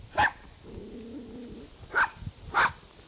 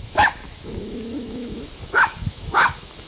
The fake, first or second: second